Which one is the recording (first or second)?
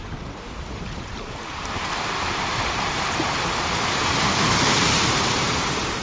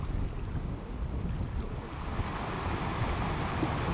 second